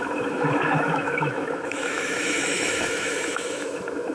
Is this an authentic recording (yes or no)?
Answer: no